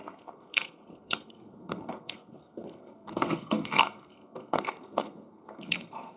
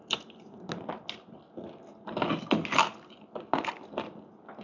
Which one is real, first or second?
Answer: second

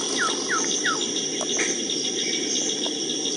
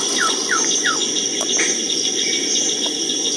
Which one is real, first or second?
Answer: first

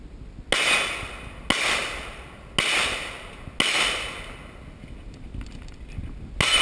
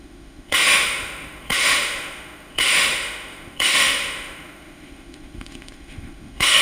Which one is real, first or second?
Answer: first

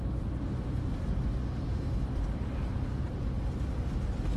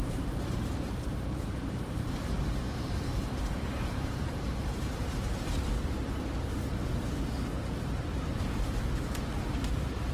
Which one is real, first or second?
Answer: first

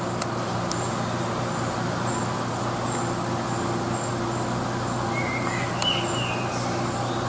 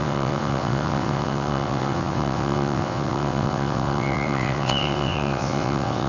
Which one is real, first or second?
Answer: first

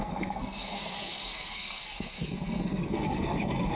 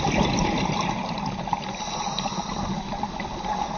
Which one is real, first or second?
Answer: second